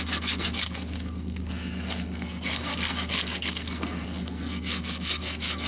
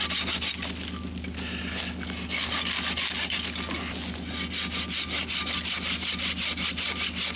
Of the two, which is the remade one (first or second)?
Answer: first